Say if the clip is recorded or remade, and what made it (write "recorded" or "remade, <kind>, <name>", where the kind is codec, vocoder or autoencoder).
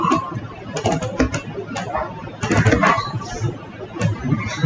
recorded